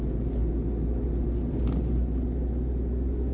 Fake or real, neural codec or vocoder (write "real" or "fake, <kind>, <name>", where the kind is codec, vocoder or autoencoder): real